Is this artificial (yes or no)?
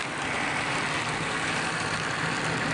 no